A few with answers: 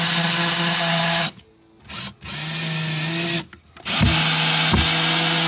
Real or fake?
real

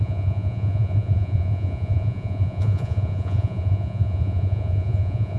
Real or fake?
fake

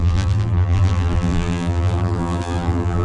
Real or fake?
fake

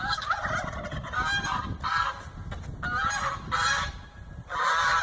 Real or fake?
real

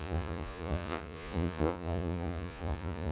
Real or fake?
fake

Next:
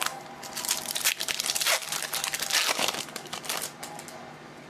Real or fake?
real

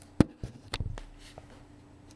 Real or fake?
real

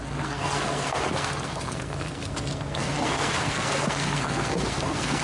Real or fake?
fake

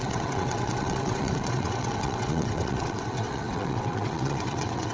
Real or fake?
fake